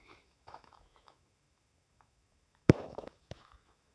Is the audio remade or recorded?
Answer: remade